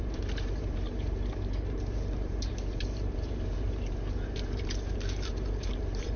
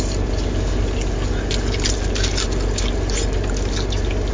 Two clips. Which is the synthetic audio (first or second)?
first